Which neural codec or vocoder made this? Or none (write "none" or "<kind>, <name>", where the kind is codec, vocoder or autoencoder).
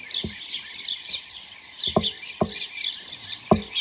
none